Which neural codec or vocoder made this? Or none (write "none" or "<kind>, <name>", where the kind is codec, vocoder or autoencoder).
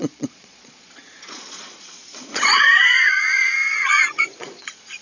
vocoder, Vocos